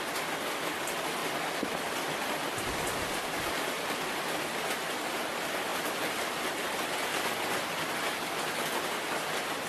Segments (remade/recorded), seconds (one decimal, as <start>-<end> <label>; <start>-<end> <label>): 0.0-1.2 recorded; 1.2-5.1 remade; 5.1-5.7 recorded; 5.7-6.9 remade; 6.9-9.7 recorded